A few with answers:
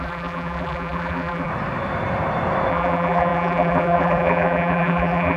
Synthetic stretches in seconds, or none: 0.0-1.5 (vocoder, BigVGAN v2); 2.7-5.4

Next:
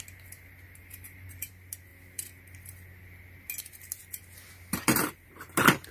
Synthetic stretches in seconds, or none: 0.8-1.5 (vocoder, BigVGAN v2)

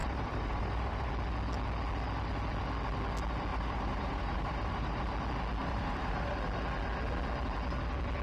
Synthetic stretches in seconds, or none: 0.0-1.1 (vocoder, BigVGAN v2); 3.5-5.0; 5.6-6.3

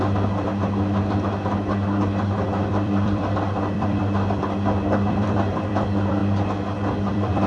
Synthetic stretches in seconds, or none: 0.0-0.5 (vocoder, BigVGAN v2); 2.7-6.2; 7.1-7.5

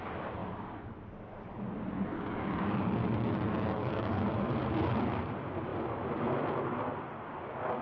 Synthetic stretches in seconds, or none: none

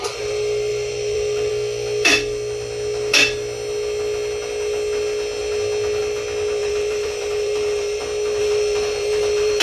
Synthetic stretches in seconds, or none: 0.7-1.5 (vocoder, BigVGAN v2); 6.6-8.0; 8.4-9.6